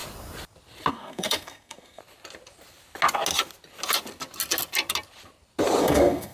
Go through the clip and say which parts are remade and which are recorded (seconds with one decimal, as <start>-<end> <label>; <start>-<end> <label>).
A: 0.0-0.9 recorded; 0.9-2.0 remade; 2.0-5.8 recorded; 5.8-6.3 remade

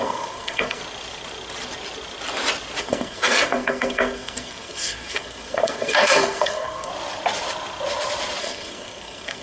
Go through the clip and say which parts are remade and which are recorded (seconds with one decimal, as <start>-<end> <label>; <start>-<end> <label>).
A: 0.0-0.8 remade; 0.8-2.8 recorded; 2.8-6.9 remade; 6.9-8.4 recorded; 8.4-9.4 remade

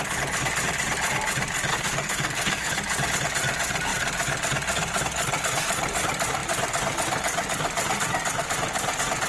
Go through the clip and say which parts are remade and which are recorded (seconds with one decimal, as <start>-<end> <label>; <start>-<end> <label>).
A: 0.0-1.7 recorded; 1.7-2.7 remade; 2.7-9.3 recorded

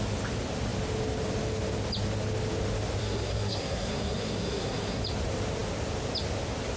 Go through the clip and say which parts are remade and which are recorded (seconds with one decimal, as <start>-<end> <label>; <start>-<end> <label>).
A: 0.0-3.0 recorded; 3.0-5.0 remade; 5.0-6.8 recorded

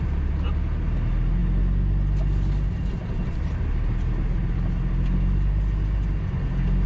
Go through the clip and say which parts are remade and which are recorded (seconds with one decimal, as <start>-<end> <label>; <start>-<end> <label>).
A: 0.0-6.9 recorded

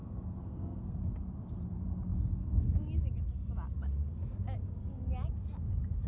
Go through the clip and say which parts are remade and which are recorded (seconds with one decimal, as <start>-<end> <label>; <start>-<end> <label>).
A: 0.0-1.0 remade; 1.0-6.1 recorded

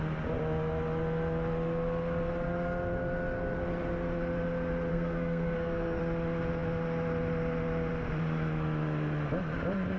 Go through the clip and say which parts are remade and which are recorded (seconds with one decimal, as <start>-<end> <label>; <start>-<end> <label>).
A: 0.0-4.9 recorded; 4.9-6.0 remade; 6.0-10.0 recorded

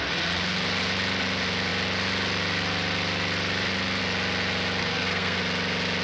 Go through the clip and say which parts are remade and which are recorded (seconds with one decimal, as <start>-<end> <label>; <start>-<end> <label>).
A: 0.0-4.8 recorded; 4.8-5.4 remade; 5.4-6.0 recorded